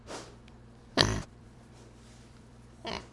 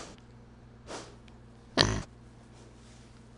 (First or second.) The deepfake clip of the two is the first